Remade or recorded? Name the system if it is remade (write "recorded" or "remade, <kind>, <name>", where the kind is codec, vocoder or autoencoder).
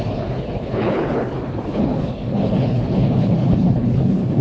remade, codec, HILCodec